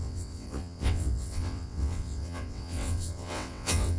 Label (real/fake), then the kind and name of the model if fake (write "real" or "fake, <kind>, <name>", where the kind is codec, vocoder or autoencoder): fake, vocoder, WaveNeXt